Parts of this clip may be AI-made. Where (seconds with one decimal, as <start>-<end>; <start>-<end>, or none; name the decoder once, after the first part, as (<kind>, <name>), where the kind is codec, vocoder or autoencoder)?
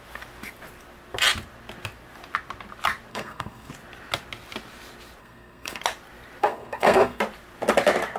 3.1-3.7 (codec, SNAC); 5.2-5.8; 6.4-7.2